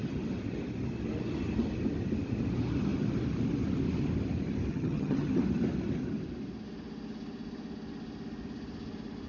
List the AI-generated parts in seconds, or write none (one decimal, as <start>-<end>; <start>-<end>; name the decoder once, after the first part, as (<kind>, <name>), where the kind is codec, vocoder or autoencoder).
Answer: 4.7-5.4 (vocoder, HiFi-GAN)